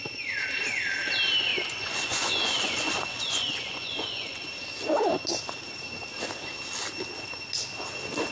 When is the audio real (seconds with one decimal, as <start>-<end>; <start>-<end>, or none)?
0.0-1.5; 4.5-8.3